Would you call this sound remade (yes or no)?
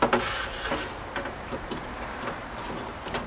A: no